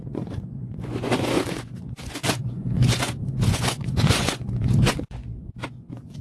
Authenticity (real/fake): fake